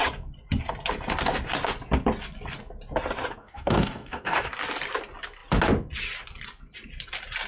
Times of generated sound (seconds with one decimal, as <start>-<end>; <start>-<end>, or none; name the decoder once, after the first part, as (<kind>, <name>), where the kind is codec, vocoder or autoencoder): 3.4-4.5 (codec, DAC)